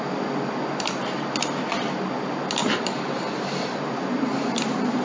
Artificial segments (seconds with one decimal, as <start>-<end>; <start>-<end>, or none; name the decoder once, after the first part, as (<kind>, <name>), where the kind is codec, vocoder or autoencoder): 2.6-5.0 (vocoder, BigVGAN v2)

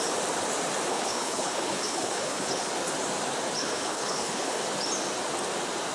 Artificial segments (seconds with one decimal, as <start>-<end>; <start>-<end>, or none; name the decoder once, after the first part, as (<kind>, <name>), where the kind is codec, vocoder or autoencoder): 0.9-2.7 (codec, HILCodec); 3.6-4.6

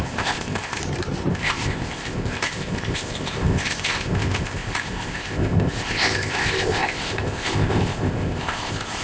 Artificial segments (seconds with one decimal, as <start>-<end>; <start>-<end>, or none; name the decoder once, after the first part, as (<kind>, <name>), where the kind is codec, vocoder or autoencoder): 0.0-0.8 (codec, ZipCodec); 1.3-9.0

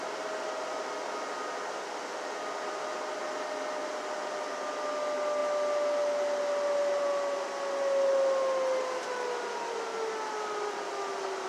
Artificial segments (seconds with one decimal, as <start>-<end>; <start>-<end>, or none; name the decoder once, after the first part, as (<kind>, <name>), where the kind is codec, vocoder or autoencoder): none

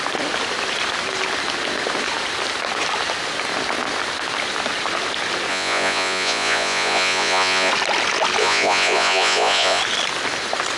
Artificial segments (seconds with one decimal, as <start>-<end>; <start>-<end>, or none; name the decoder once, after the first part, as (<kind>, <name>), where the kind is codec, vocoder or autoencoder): 5.5-7.7 (vocoder, Vocos); 8.4-9.8